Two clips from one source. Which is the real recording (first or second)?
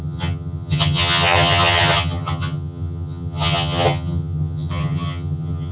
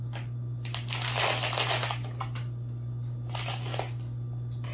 second